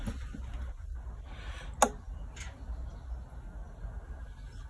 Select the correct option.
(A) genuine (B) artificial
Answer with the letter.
A